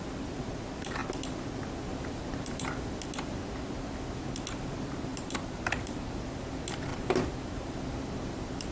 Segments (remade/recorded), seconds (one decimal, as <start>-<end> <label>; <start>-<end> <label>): 0.0-1.9 recorded; 1.9-3.0 remade; 3.0-5.1 recorded; 5.1-6.1 remade; 6.1-6.9 recorded; 6.9-7.7 remade; 7.7-8.7 recorded